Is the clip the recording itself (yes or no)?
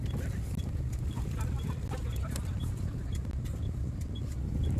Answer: yes